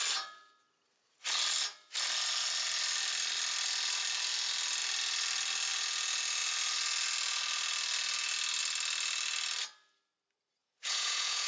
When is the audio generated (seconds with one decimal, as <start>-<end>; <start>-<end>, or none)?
10.6-11.5